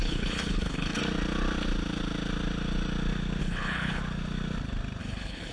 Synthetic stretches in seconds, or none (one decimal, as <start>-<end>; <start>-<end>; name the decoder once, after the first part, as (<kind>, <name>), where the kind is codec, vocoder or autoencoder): 0.0-1.0 (codec, HILCodec); 3.4-4.0; 5.0-5.5